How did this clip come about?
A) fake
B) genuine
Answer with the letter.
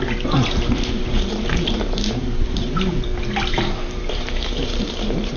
A